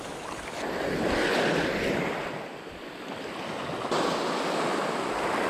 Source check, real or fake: real